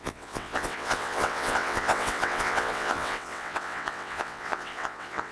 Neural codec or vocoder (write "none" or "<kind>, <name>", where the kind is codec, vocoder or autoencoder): vocoder, WaveNeXt